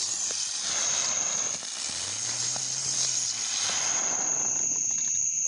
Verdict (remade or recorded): remade